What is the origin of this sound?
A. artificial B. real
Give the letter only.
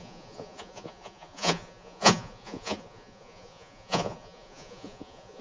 A